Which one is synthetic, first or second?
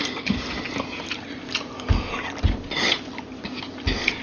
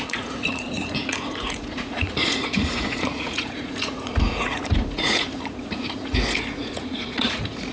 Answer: second